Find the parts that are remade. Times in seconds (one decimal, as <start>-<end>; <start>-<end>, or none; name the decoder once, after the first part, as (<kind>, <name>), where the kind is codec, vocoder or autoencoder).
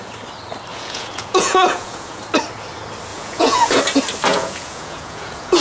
0.7-2.2 (vocoder, Vocos); 3.1-3.8; 4.3-5.6